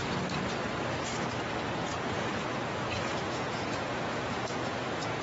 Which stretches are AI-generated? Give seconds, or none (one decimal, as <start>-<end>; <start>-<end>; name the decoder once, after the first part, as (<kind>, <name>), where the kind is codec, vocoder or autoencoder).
1.7-5.2 (vocoder, Vocos)